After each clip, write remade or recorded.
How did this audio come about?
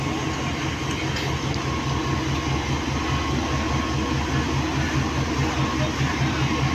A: recorded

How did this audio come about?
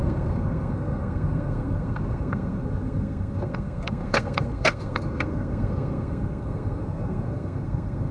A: remade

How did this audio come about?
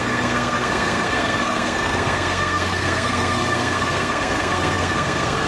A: remade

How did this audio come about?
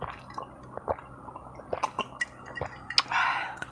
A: recorded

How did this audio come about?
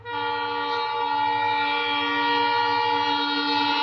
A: recorded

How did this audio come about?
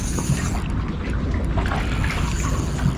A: recorded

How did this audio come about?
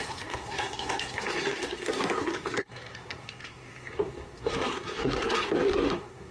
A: remade